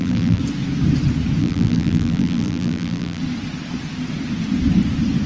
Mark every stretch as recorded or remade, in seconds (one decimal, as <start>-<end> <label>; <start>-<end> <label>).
0.0-0.4 remade; 0.4-1.4 recorded; 1.4-3.2 remade; 3.2-5.3 recorded

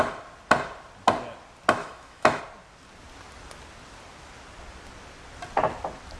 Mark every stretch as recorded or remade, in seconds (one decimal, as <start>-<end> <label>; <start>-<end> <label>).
0.0-1.8 recorded; 1.8-2.4 remade; 2.4-6.2 recorded